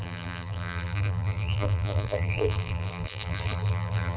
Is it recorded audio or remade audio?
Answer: remade